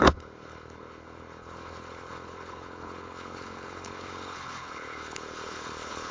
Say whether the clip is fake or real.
fake